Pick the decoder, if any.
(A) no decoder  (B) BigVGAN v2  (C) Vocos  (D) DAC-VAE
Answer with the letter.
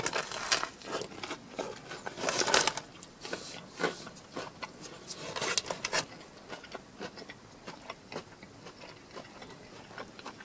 A